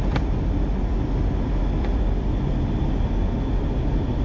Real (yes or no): yes